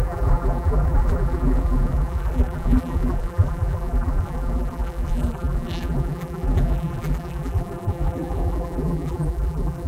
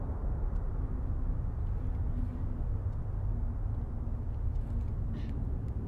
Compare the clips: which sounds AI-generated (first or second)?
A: first